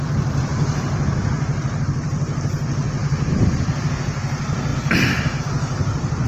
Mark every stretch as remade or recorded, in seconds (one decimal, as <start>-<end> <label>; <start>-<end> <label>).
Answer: 0.0-3.0 recorded; 3.0-3.9 remade; 3.9-4.7 recorded; 4.7-5.4 remade; 5.4-6.3 recorded